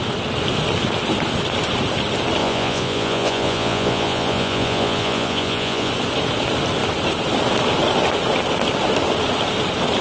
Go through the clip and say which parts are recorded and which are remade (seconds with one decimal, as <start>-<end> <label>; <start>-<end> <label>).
0.0-2.4 recorded; 2.4-5.9 remade; 5.9-10.0 recorded